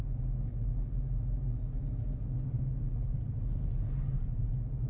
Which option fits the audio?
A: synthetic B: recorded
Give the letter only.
B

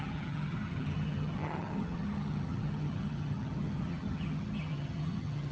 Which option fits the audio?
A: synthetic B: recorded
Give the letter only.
A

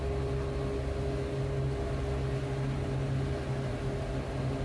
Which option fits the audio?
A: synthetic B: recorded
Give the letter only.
B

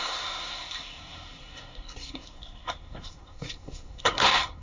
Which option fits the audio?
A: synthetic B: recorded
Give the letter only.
A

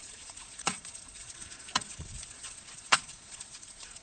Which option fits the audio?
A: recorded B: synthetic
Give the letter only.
B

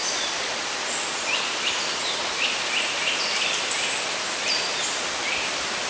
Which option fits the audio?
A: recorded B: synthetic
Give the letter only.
A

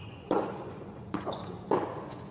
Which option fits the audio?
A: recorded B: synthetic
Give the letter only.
B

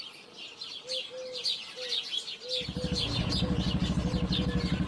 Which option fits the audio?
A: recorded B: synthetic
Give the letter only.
A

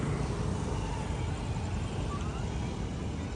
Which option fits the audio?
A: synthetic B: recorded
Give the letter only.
B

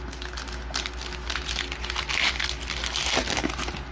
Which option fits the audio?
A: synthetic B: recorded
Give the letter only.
B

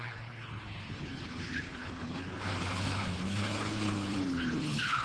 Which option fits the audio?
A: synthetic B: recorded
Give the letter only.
A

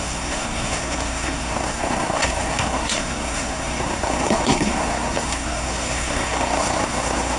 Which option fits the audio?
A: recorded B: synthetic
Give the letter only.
B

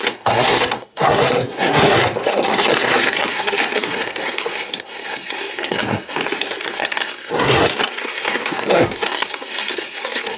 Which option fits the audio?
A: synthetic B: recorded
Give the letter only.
A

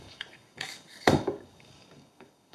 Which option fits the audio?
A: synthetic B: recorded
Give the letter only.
A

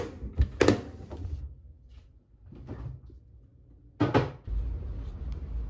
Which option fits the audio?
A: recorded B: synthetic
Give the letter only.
A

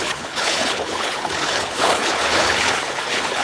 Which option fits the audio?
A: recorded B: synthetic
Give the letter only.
B